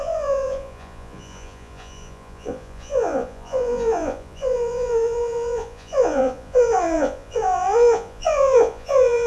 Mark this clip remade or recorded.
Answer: remade